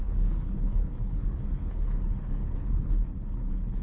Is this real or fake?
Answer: fake